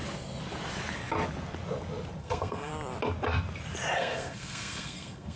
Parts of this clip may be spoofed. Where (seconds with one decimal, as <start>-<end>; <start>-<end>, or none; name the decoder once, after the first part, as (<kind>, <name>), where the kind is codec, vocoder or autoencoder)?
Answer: 2.2-2.7 (codec, SNAC); 4.0-5.4